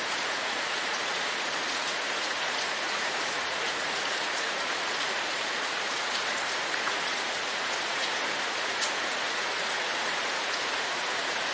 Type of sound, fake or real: fake